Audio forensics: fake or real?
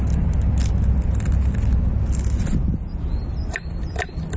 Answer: real